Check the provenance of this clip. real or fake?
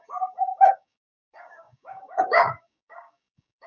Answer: fake